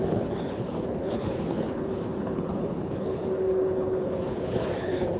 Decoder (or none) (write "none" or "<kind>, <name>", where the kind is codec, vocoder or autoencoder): codec, HILCodec